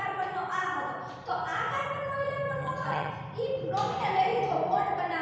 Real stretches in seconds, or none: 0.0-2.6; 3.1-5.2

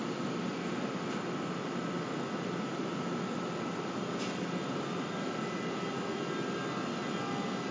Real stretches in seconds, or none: 0.0-7.7

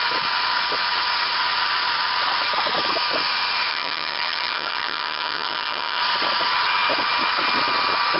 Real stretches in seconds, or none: 0.0-3.7; 6.0-8.2

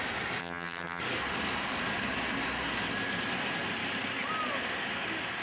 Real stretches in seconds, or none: 0.0-0.4; 1.0-5.4